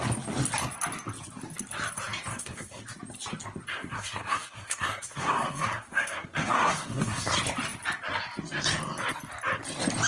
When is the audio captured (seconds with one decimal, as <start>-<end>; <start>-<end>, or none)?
0.0-2.3; 2.8-3.7; 7.3-10.1